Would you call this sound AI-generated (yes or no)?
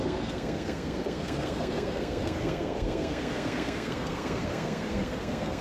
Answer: yes